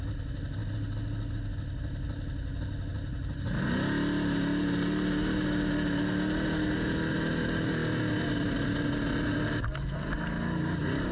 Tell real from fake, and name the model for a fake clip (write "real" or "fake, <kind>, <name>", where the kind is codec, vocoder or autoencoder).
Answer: real